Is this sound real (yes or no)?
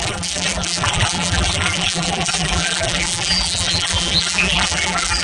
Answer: no